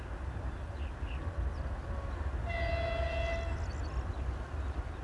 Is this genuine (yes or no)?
yes